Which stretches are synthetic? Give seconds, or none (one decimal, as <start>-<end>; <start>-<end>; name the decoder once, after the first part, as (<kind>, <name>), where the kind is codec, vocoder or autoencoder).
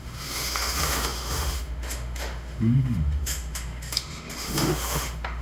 0.0-5.4 (autoencoder, DAC-VAE)